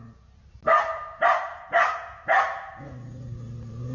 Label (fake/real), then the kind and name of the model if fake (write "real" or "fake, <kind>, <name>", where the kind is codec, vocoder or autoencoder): real